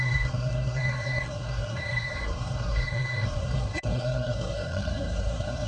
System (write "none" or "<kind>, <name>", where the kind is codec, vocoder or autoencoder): codec, SNAC